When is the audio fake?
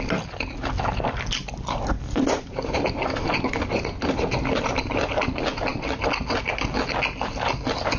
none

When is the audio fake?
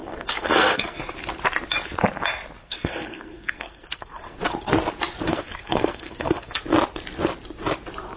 0.0-1.0 (codec, SNAC); 2.6-4.4; 5.3-6.6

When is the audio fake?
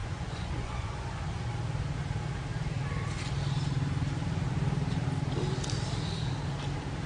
0.0-1.5 (vocoder, Vocos)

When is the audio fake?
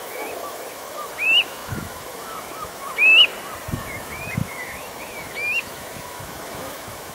0.0-3.3 (autoencoder, DAC-VAE); 3.8-7.1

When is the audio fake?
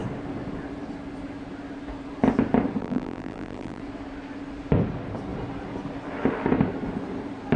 2.8-3.8 (vocoder, BigVGAN v2)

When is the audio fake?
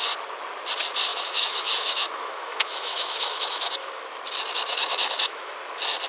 1.1-4.0 (autoencoder, DAC-VAE); 4.7-5.5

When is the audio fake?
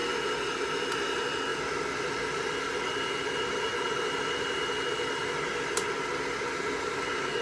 1.5-2.0 (vocoder, BigVGAN v2)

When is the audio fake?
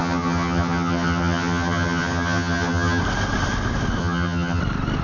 0.0-3.0 (vocoder, HiFi-GAN); 4.0-4.6